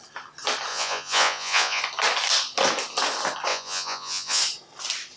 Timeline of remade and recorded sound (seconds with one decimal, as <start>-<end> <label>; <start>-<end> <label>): 0.0-0.7 recorded; 0.7-1.8 remade; 1.8-3.5 recorded; 3.5-4.4 remade; 4.4-5.2 recorded